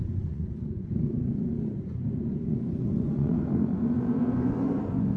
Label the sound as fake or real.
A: fake